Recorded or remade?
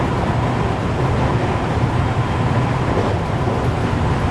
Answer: recorded